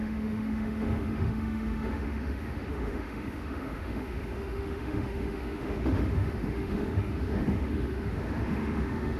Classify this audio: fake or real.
fake